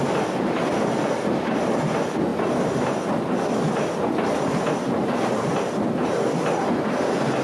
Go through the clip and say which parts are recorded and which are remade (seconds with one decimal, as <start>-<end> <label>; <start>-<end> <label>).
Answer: 0.0-7.4 recorded

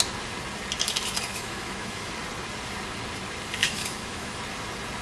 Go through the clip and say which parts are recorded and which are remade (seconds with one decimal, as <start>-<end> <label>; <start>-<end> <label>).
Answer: 0.0-1.3 recorded; 1.3-2.1 remade; 2.1-3.6 recorded; 3.6-4.4 remade; 4.4-5.0 recorded

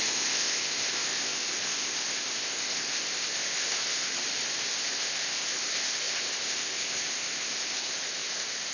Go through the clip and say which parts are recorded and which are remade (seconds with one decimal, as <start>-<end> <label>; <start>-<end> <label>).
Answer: 0.0-4.1 remade; 4.1-4.7 recorded; 4.7-8.7 remade

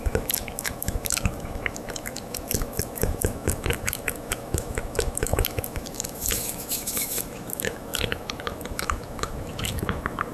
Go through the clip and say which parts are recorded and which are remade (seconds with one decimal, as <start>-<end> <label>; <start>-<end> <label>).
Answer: 0.0-10.3 remade

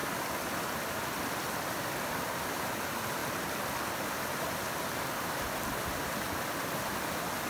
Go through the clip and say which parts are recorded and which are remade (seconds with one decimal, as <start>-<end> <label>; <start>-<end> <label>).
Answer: 0.0-7.5 recorded

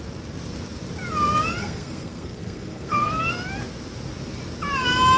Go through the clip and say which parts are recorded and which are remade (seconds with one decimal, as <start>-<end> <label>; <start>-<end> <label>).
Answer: 0.0-1.6 recorded; 1.6-3.2 remade; 3.2-5.2 recorded

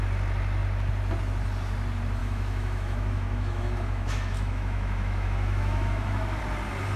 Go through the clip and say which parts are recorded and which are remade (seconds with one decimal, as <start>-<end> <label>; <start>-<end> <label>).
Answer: 0.0-2.2 recorded; 2.2-6.4 remade; 6.4-7.0 recorded

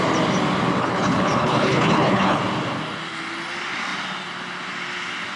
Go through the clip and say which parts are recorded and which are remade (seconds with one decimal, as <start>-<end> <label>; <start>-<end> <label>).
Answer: 0.0-0.8 recorded; 0.8-2.4 remade; 2.4-5.4 recorded